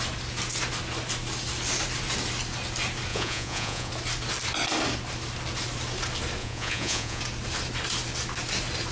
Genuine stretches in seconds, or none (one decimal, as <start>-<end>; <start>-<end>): 0.0-3.1; 3.9-6.4; 7.2-8.9